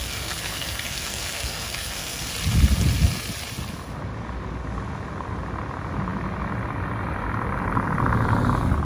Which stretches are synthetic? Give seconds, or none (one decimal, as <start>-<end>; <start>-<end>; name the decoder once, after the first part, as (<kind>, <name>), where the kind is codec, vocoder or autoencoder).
0.0-2.3 (codec, SNAC)